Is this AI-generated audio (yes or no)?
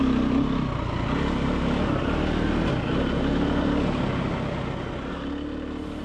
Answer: no